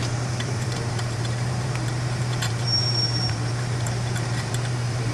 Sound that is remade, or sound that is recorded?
remade